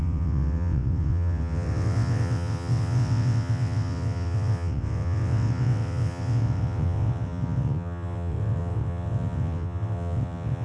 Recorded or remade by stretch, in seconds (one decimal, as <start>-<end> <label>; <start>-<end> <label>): 0.0-10.6 remade